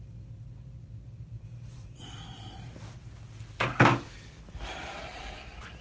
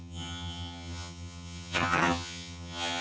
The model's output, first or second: second